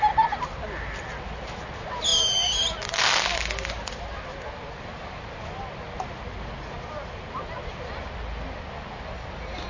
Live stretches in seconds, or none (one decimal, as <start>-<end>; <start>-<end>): 0.0-9.7